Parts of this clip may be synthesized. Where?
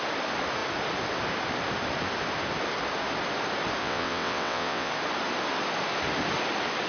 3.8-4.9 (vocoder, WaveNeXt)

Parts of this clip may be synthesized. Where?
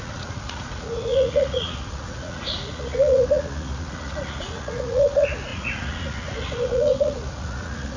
0.0-8.0 (vocoder, Vocos)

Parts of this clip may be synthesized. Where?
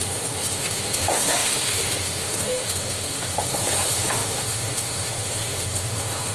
0.0-6.3 (autoencoder, DAC-VAE)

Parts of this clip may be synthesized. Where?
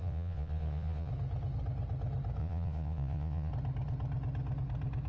0.0-1.1 (vocoder, Vocos); 2.4-3.5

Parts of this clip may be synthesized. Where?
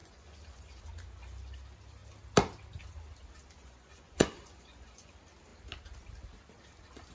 0.0-0.8 (vocoder, Vocos); 3.6-5.1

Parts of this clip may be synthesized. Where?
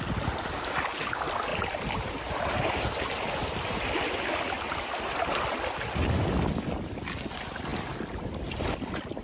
none